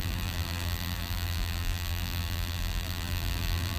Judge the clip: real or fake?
fake